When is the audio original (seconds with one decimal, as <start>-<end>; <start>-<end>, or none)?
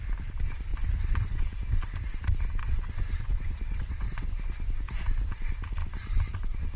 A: 0.0-0.7; 1.4-2.6; 4.3-6.8